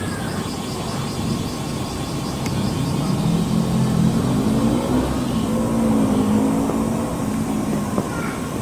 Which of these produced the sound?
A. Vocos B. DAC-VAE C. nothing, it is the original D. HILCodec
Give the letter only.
C